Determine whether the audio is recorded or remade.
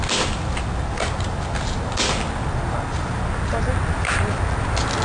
recorded